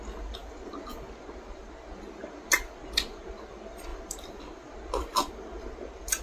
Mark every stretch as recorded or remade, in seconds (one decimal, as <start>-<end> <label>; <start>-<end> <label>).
0.0-6.2 recorded